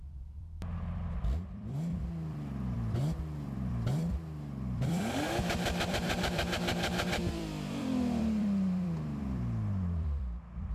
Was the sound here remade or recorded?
remade